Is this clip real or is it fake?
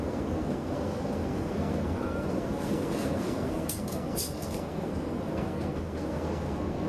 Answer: fake